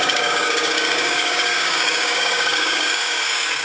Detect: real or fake fake